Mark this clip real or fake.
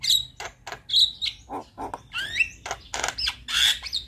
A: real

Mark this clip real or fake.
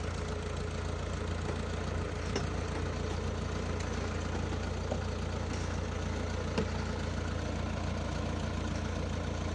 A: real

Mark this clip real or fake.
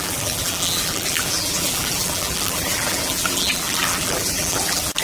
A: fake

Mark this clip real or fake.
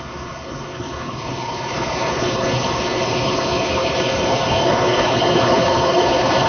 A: fake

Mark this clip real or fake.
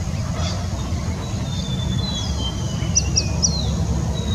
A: real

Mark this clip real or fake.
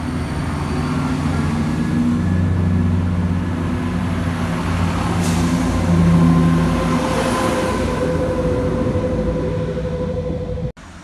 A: real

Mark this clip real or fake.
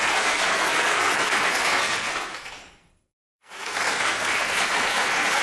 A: fake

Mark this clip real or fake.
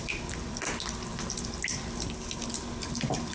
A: real